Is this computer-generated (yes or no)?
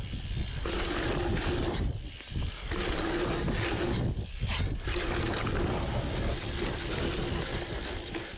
no